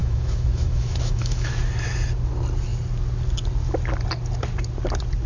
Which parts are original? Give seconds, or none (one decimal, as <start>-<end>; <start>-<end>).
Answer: 1.5-5.3